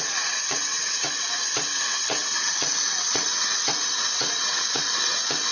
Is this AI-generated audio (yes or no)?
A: yes